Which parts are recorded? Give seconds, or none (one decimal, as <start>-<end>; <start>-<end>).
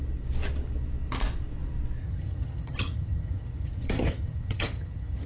0.0-2.0